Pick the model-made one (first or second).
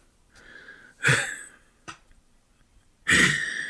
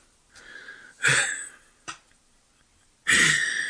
first